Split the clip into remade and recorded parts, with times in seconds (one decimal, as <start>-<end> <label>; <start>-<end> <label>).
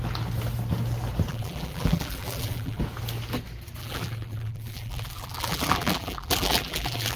0.0-1.3 recorded; 1.3-2.8 remade; 2.8-3.8 recorded; 3.8-7.2 remade